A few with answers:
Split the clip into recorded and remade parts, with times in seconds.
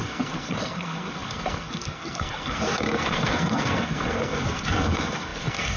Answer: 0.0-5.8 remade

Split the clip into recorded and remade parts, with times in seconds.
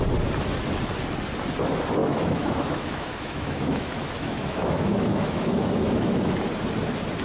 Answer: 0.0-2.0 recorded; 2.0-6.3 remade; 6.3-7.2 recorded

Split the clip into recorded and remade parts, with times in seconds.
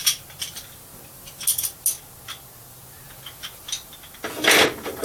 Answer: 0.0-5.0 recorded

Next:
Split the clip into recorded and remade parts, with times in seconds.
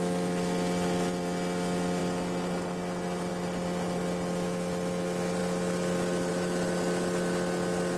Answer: 0.0-8.0 recorded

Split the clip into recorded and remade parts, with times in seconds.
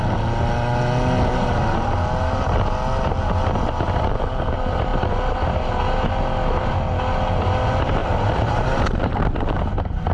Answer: 0.0-8.0 recorded; 8.0-9.6 remade; 9.6-10.1 recorded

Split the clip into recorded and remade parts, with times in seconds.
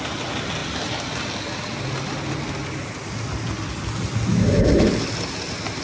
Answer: 0.0-4.3 recorded; 4.3-4.9 remade; 4.9-5.8 recorded